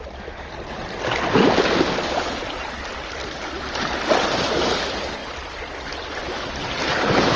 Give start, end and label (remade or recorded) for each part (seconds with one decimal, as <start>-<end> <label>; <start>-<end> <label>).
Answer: 0.0-7.4 recorded